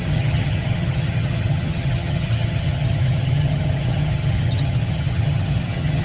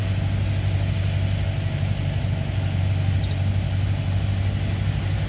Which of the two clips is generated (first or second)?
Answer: first